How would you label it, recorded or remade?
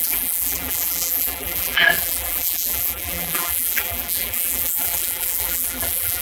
remade